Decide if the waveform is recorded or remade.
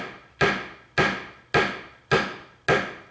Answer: recorded